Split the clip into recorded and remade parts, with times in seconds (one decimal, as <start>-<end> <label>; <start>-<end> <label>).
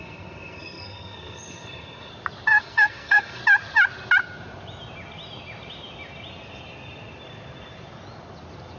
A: 0.0-2.1 remade; 2.1-2.6 recorded; 2.6-3.4 remade; 3.4-8.8 recorded